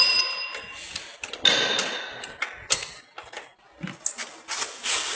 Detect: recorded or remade recorded